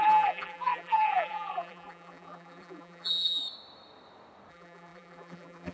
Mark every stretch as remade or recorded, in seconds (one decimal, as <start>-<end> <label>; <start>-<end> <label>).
0.0-3.4 remade; 3.4-4.5 recorded; 4.5-5.7 remade